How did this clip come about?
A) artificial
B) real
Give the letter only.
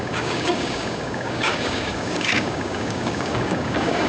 A